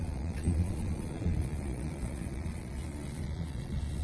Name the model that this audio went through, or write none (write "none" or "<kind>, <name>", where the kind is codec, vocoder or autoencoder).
vocoder, Vocos